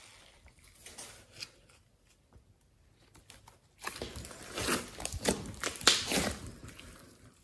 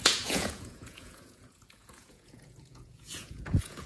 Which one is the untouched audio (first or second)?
first